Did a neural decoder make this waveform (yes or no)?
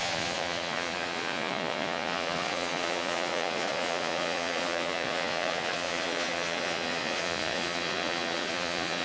yes